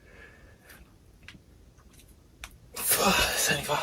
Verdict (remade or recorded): recorded